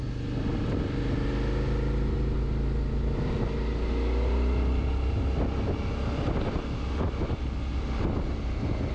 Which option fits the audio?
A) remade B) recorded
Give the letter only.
B